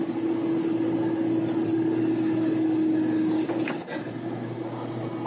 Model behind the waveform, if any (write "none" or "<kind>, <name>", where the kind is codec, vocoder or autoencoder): none